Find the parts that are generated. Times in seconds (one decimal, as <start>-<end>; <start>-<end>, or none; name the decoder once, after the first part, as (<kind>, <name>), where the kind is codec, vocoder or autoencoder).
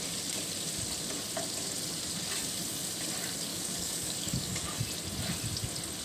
3.5-4.8 (codec, DAC)